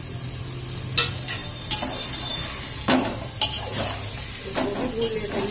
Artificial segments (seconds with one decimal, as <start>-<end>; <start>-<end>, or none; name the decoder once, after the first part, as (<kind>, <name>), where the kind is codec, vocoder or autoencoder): none